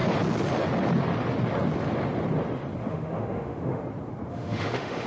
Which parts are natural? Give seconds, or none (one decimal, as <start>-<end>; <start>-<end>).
0.0-2.9; 3.8-4.3